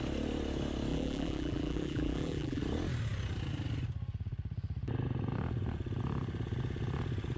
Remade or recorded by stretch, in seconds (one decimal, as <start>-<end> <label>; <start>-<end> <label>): 0.0-0.9 recorded; 0.9-2.6 remade; 2.6-7.4 recorded